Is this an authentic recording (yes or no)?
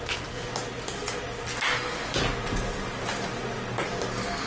yes